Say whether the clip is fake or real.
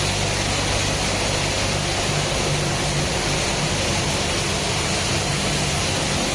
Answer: real